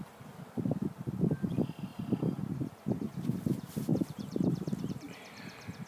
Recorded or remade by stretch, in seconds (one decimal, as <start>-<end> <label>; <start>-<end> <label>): 0.0-3.9 recorded; 3.9-4.8 remade; 4.8-5.9 recorded